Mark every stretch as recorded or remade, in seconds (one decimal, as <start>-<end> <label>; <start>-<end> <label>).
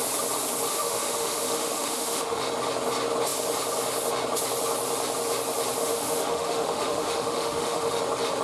0.0-0.7 recorded; 0.7-2.4 remade; 2.4-5.8 recorded; 5.8-8.0 remade; 8.0-8.4 recorded